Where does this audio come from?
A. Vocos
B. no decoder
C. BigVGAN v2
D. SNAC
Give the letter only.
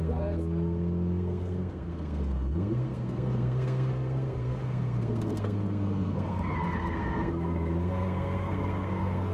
D